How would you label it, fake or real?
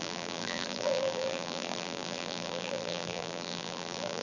fake